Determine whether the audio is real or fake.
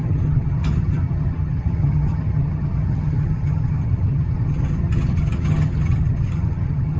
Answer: fake